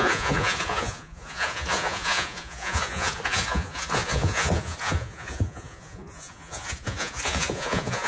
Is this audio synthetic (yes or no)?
yes